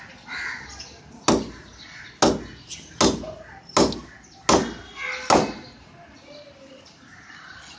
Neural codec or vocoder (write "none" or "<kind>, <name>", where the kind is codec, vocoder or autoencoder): none